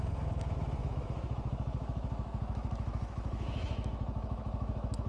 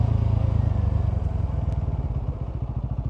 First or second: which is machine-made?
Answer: first